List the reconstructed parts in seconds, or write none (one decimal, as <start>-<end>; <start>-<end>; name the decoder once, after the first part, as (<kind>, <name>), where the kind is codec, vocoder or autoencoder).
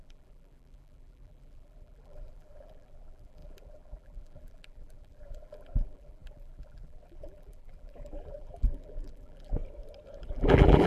0.0-9.6 (vocoder, BigVGAN v2); 10.2-10.9